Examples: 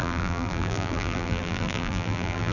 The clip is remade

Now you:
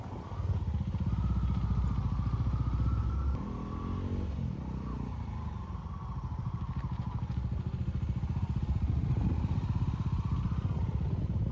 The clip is recorded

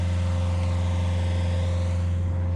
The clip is recorded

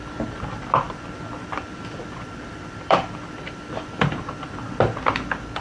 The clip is remade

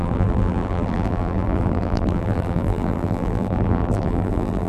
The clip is remade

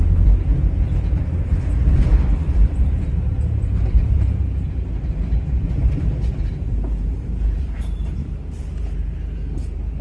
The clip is remade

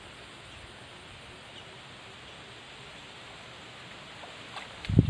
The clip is recorded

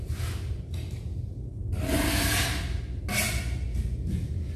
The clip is recorded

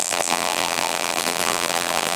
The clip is remade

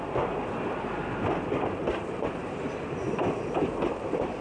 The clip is remade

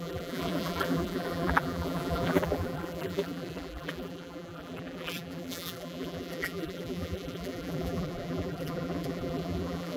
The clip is remade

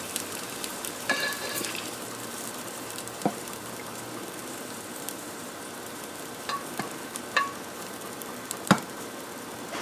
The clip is remade